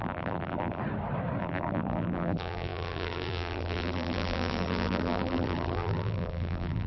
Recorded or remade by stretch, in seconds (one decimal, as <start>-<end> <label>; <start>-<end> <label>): 0.0-0.8 remade; 0.8-1.4 recorded; 1.4-6.9 remade